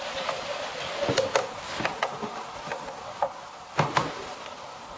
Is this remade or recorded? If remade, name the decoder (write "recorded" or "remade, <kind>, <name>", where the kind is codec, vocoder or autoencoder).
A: recorded